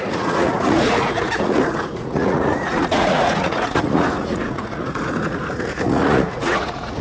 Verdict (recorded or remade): remade